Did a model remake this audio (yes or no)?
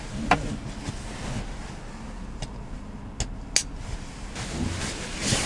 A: no